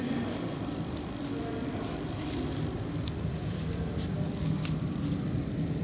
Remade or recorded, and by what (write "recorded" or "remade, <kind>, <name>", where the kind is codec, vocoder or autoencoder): recorded